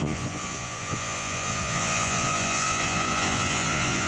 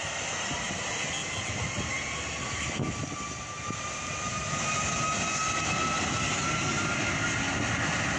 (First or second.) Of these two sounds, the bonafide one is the second